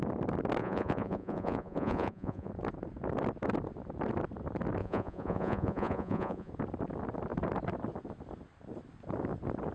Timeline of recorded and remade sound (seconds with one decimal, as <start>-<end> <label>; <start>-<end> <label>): 0.0-0.6 recorded; 0.6-2.5 remade; 2.5-4.8 recorded; 4.8-6.5 remade; 6.5-9.7 recorded